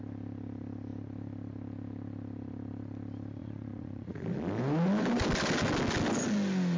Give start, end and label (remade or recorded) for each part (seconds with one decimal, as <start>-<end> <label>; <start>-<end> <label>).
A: 0.0-3.4 recorded; 3.4-4.2 remade; 4.2-6.8 recorded